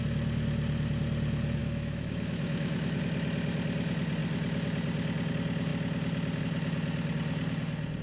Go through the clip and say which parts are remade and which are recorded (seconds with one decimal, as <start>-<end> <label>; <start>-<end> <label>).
0.0-1.6 recorded; 1.6-3.0 remade; 3.0-8.0 recorded